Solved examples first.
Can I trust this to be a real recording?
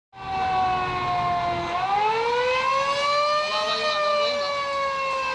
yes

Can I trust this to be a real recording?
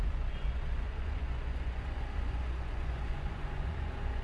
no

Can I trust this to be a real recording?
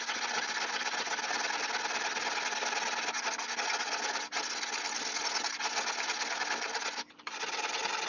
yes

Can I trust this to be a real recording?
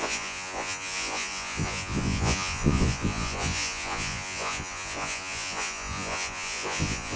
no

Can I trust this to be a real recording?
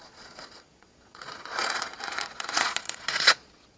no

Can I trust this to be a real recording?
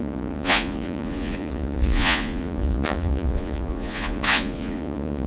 no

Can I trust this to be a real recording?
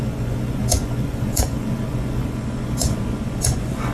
no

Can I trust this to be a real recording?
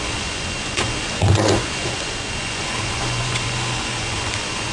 no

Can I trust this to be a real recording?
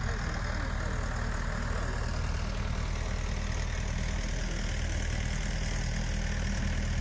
yes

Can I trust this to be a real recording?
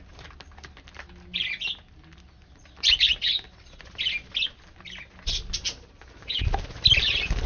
yes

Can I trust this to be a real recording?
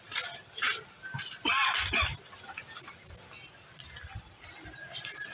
yes